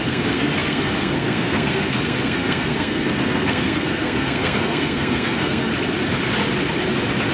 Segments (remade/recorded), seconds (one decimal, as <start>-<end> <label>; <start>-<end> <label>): 0.0-5.7 remade; 5.7-7.3 recorded